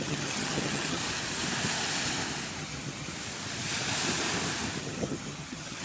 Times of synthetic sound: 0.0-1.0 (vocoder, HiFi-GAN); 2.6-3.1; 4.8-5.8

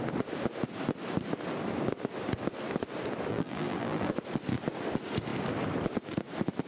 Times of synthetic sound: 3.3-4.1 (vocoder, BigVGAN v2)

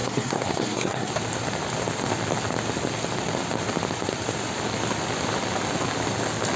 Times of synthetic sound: 0.0-1.1 (codec, SNAC)